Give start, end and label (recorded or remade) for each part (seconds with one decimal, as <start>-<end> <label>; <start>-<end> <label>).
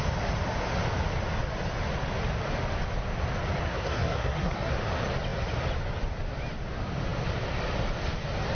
0.0-3.6 recorded; 3.6-4.7 remade; 4.7-8.5 recorded